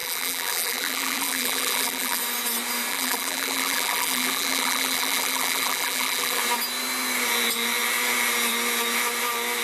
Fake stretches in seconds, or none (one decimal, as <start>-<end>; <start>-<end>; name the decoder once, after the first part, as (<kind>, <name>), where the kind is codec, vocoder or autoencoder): 0.0-2.2 (vocoder, BigVGAN v2); 2.9-6.4